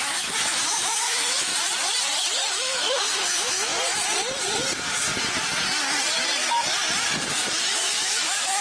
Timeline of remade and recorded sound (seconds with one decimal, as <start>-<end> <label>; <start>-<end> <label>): 0.0-1.5 remade; 1.5-2.5 recorded; 2.5-3.7 remade; 3.7-7.3 recorded; 7.3-8.6 remade